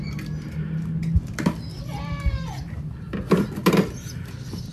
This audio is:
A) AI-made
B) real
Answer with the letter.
B